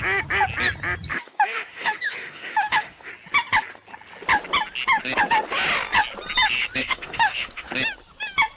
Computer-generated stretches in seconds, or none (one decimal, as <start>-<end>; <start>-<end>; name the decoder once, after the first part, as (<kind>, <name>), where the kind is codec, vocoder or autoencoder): 1.1-3.1 (autoencoder, DAC-VAE); 6.8-7.7